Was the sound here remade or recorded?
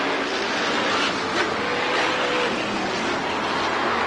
recorded